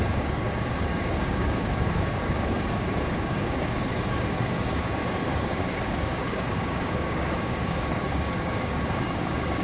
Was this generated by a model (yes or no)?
yes